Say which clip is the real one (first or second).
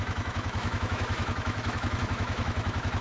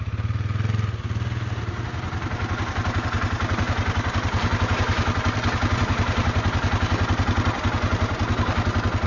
second